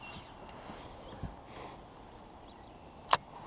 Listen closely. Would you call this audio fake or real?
real